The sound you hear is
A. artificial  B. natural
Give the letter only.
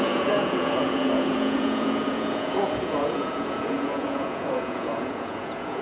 A